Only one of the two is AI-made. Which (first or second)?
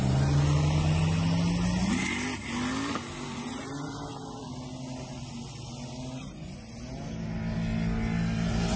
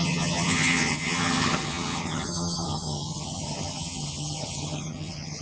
second